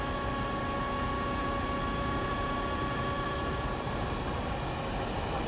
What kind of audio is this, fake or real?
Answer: real